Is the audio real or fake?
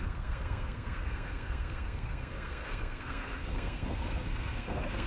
fake